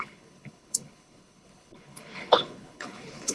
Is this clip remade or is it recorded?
remade